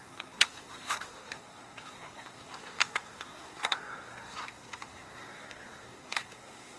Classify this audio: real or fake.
fake